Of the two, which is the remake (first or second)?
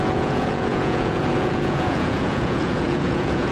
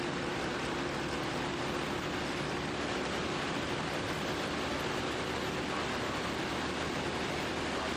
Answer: first